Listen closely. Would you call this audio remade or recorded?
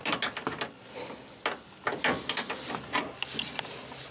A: recorded